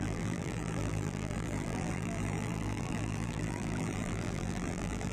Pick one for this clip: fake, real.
fake